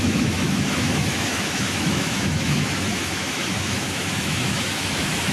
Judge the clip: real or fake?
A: fake